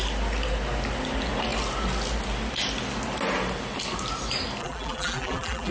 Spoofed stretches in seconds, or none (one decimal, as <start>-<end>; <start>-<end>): 4.6-5.7